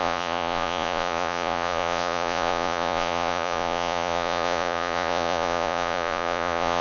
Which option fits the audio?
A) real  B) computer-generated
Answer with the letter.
B